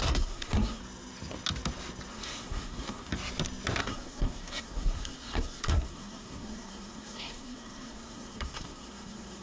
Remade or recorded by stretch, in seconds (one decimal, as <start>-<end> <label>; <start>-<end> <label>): 0.0-0.8 remade; 0.8-2.1 recorded; 2.1-3.1 remade; 3.1-3.8 recorded; 3.8-9.4 remade